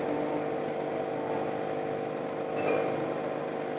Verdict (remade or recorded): recorded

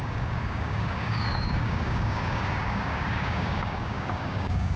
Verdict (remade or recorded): remade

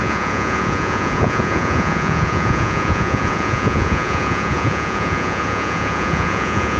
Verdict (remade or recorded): remade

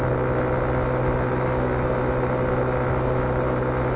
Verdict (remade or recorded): recorded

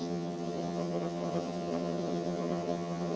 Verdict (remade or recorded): remade